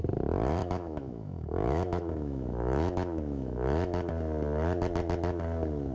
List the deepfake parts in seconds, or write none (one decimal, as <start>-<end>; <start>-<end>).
0.6-4.1